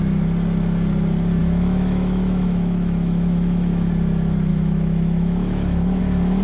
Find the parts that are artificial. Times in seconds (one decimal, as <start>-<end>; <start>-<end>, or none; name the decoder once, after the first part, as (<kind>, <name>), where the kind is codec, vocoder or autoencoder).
1.4-3.9 (autoencoder, DAC-VAE); 4.5-6.0